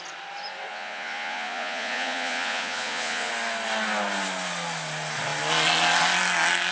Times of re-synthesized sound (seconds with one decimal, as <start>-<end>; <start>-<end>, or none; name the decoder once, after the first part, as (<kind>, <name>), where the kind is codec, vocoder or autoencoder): 0.7-3.3 (vocoder, Vocos)